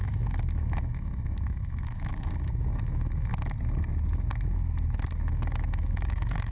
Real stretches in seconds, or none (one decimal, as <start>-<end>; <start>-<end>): 3.3-5.3

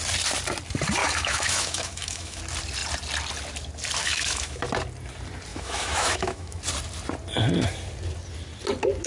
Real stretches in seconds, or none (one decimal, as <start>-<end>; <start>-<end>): 0.0-1.0; 2.4-4.0; 4.6-5.5; 6.6-9.1

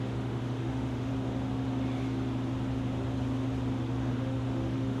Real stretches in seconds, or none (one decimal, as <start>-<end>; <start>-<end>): 1.1-4.1

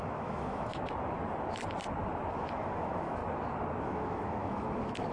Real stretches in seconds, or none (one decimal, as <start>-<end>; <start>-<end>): 0.7-2.3; 3.2-3.8

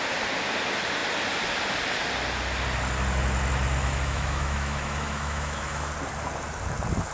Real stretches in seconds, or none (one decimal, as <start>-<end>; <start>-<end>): 0.0-3.8; 5.9-7.1

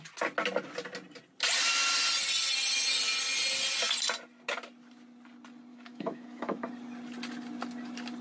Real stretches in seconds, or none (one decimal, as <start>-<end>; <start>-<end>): 0.0-5.7; 6.6-8.2

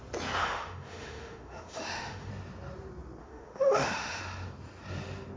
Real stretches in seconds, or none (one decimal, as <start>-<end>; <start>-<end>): 0.0-0.4; 2.3-3.2; 4.2-5.4